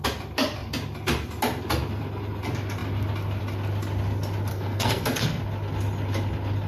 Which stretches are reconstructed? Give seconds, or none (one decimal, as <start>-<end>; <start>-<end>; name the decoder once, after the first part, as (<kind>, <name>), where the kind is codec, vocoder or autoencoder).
4.5-5.4 (codec, SNAC)